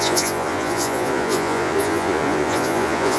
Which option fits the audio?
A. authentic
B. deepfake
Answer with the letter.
B